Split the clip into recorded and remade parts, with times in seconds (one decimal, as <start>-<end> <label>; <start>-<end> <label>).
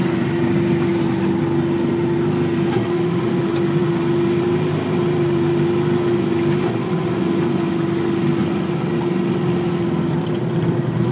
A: 0.0-11.1 recorded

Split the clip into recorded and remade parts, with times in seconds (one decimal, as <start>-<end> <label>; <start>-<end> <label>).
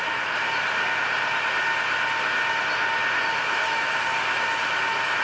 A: 0.0-0.4 remade; 0.4-3.5 recorded; 3.5-4.1 remade; 4.1-5.2 recorded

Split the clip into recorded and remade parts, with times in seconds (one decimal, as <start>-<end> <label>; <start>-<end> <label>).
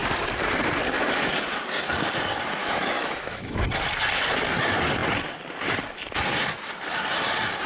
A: 0.0-2.6 recorded; 2.6-3.6 remade; 3.6-7.7 recorded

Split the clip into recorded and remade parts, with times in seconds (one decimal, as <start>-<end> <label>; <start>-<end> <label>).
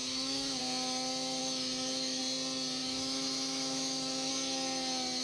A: 0.0-0.6 remade; 0.6-1.4 recorded; 1.4-2.2 remade; 2.2-2.8 recorded; 2.8-4.3 remade; 4.3-5.2 recorded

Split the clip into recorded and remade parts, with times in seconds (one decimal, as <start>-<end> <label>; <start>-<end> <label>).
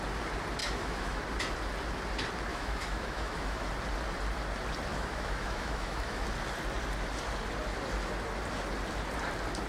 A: 0.0-0.6 recorded; 0.6-1.2 remade; 1.2-2.5 recorded; 2.5-3.7 remade; 3.7-4.9 recorded; 4.9-6.2 remade; 6.2-9.7 recorded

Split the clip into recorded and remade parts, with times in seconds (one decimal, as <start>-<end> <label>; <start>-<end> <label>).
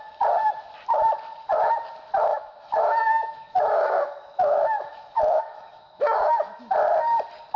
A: 0.0-2.3 recorded; 2.3-6.6 remade; 6.6-7.6 recorded